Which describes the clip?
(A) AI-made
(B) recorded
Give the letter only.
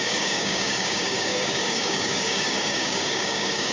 A